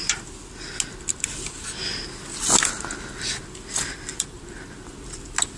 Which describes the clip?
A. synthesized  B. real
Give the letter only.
B